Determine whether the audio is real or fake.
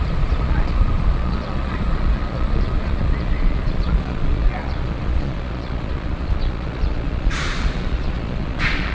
fake